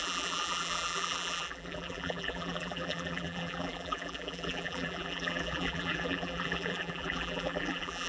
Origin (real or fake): fake